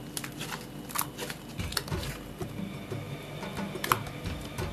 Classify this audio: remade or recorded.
recorded